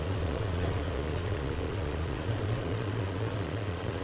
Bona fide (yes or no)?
no